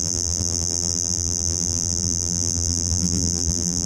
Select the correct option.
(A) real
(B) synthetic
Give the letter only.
B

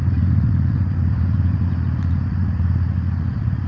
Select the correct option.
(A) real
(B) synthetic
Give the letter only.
B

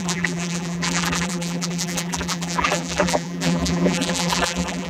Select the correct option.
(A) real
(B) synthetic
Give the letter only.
B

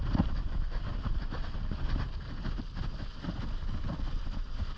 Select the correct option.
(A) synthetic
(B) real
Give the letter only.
B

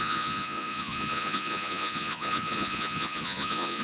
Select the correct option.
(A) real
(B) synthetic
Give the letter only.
B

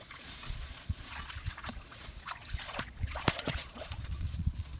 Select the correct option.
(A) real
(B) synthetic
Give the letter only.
B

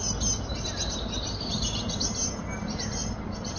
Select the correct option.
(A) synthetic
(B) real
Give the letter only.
B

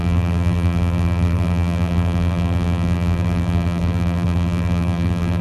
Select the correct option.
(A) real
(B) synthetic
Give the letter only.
B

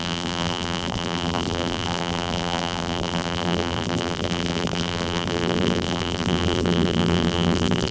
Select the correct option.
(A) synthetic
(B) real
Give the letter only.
A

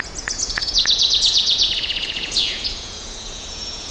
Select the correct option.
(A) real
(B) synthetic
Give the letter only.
B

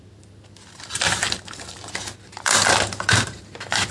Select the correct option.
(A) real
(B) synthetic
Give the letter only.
A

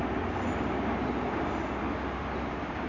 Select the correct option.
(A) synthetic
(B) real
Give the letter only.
B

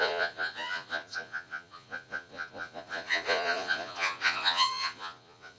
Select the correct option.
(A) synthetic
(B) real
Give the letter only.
A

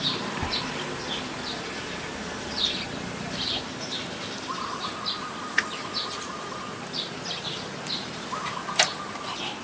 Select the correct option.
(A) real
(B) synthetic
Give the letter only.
A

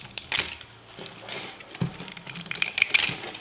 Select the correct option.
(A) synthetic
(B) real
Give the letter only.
B